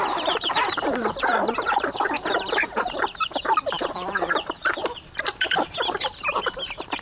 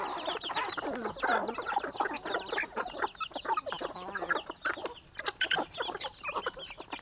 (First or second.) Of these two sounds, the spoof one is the first